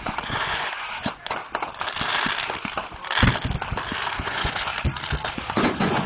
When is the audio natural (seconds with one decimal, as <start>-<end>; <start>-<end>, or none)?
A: 1.4-4.2; 4.7-5.3